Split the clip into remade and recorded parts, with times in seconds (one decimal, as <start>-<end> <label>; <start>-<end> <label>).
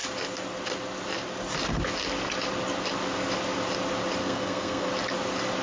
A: 0.0-4.2 recorded; 4.2-4.9 remade; 4.9-5.6 recorded